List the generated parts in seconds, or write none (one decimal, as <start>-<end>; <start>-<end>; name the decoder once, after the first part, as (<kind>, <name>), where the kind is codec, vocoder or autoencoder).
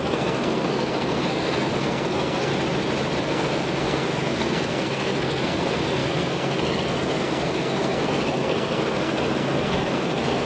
0.0-2.5 (codec, SNAC); 3.2-10.5